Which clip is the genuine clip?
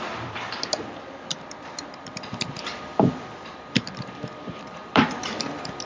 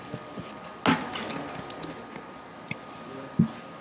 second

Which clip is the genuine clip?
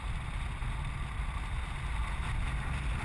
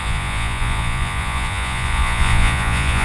first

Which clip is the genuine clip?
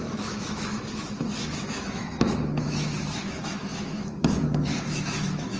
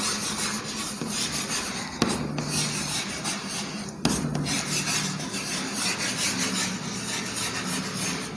second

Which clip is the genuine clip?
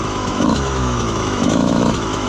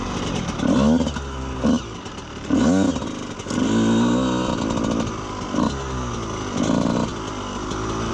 second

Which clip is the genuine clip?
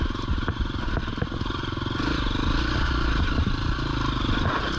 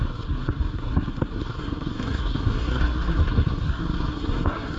first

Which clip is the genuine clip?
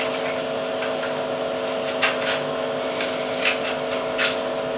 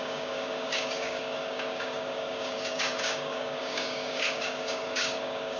first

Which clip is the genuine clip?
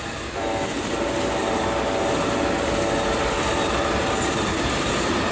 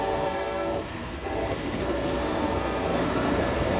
first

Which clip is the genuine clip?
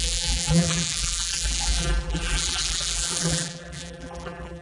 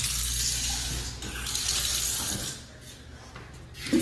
second